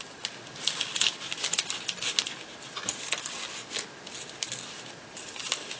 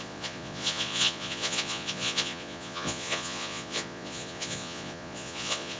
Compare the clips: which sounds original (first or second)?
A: first